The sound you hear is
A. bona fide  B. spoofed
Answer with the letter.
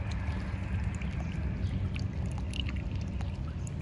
A